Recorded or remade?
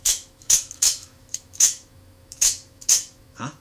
remade